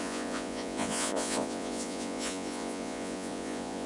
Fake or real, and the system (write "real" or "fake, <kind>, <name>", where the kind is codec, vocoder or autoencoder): fake, vocoder, Vocos